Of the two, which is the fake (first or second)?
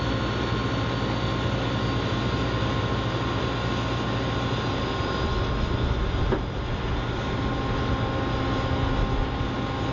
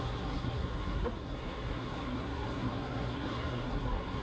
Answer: second